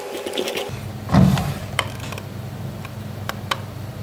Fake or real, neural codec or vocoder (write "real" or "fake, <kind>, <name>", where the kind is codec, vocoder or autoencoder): fake, vocoder, BigVGAN v2